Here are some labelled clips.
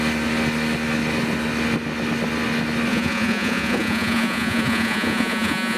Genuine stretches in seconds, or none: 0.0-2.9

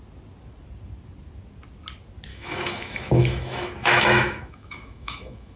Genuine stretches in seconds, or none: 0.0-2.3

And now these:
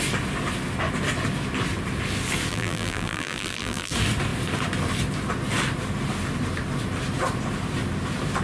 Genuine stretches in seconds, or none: 0.0-2.5; 3.9-8.4